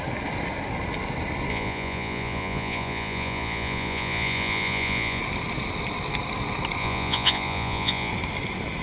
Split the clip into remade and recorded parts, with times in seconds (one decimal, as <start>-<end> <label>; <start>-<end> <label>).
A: 0.0-1.5 recorded; 1.5-5.2 remade; 5.2-6.8 recorded; 6.8-8.1 remade; 8.1-8.8 recorded